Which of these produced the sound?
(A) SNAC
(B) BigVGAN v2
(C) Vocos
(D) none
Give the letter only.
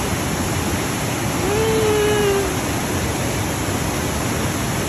D